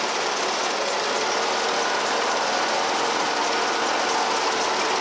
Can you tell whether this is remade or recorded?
recorded